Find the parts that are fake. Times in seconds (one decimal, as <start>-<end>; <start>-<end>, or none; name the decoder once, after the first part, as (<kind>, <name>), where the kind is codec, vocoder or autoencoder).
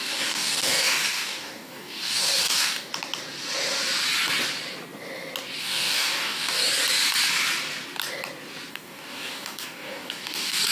0.0-2.9 (codec, DAC); 5.6-6.6; 8.7-10.7